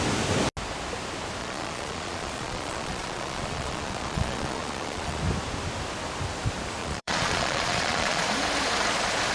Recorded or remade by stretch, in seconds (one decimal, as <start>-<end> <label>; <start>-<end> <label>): 0.0-1.4 recorded; 1.4-5.2 remade; 5.2-6.8 recorded; 6.8-8.2 remade; 8.2-9.3 recorded

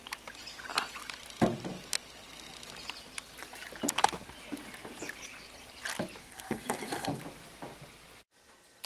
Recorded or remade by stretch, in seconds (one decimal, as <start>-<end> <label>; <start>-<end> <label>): 0.0-6.2 recorded; 6.2-7.2 remade; 7.2-8.9 recorded

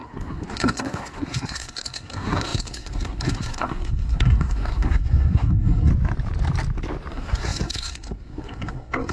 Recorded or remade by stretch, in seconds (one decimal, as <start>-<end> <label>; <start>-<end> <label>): 0.0-5.9 remade; 5.9-7.1 recorded; 7.1-9.1 remade

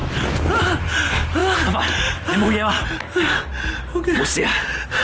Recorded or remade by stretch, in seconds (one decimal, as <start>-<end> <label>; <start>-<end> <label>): 0.0-0.6 recorded; 0.6-1.4 remade; 1.4-4.2 recorded; 4.2-5.0 remade

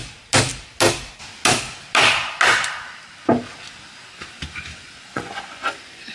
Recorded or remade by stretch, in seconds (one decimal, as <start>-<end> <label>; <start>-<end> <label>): 0.0-4.7 recorded; 4.7-6.1 remade

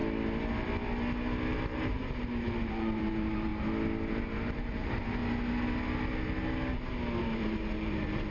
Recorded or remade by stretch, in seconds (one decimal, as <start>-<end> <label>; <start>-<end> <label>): 0.0-1.5 recorded; 1.5-3.5 remade; 3.5-4.1 recorded; 4.1-5.2 remade; 5.2-7.2 recorded; 7.2-8.3 remade

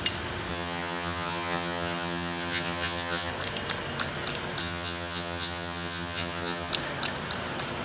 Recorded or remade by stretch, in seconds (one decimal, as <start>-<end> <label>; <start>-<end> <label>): 0.0-0.5 recorded; 0.5-3.3 remade; 3.3-4.6 recorded; 4.6-6.7 remade; 6.7-7.8 recorded